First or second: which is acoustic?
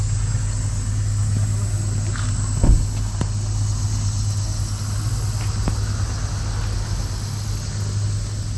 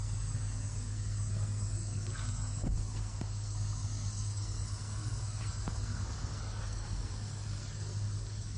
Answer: first